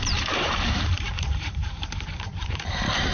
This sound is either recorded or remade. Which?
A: remade